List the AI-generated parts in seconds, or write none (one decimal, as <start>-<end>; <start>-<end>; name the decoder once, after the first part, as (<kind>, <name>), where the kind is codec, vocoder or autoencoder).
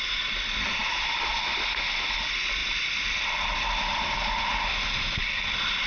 none